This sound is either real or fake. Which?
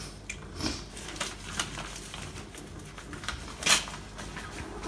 real